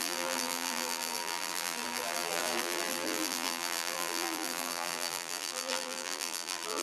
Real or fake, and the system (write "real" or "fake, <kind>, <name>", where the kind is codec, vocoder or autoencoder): fake, vocoder, BigVGAN v2